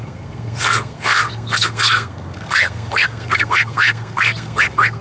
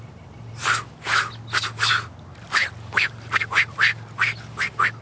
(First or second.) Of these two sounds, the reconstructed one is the first